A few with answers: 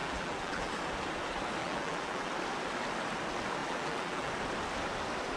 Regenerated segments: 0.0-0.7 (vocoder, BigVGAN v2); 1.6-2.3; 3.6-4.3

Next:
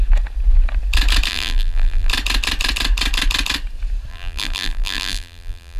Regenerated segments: 1.3-2.1 (vocoder, BigVGAN v2); 4.1-5.8